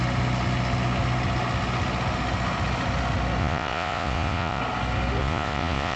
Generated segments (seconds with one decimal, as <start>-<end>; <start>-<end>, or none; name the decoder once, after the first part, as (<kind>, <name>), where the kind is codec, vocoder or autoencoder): 3.4-4.6 (vocoder, Vocos); 5.2-6.0